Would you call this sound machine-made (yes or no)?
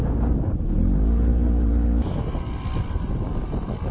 no